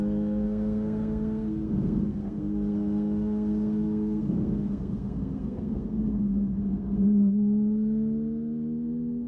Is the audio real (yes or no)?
no